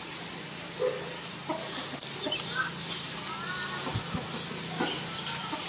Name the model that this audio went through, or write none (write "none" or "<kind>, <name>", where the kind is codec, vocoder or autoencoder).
none